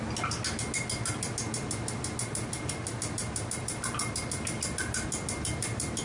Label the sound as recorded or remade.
recorded